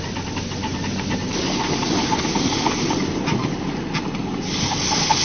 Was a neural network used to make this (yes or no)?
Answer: no